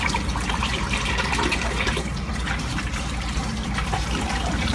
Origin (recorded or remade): remade